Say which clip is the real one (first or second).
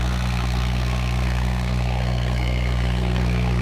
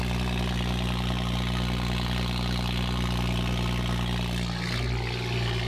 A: second